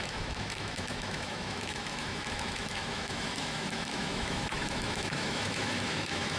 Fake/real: fake